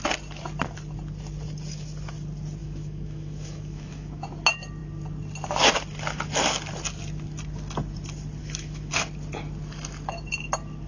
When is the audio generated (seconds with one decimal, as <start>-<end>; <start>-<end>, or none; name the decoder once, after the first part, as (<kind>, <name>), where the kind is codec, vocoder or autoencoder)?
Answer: 2.6-4.3 (autoencoder, DAC-VAE); 8.4-8.9

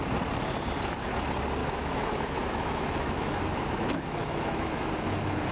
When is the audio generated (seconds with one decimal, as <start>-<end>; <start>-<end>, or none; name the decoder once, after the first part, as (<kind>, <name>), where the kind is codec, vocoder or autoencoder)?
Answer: 1.6-4.9 (autoencoder, DAC-VAE)